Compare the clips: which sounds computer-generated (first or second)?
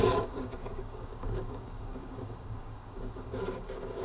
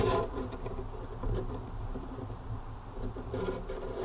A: first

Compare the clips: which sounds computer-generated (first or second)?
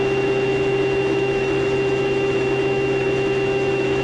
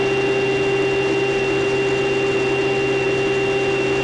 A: first